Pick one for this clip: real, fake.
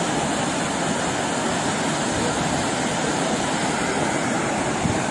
real